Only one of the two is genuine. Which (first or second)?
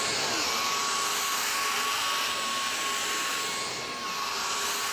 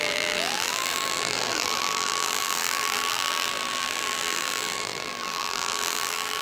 first